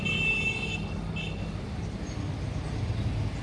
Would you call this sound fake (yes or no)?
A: no